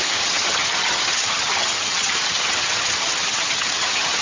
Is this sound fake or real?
fake